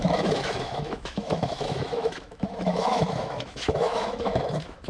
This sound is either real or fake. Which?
fake